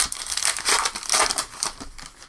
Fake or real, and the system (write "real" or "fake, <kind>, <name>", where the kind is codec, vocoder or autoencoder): real